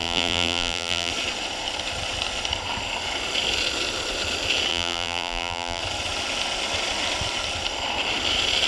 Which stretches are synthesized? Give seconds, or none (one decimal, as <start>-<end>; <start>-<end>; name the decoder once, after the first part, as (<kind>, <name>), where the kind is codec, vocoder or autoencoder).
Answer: 0.0-1.1 (vocoder, BigVGAN v2); 4.7-5.8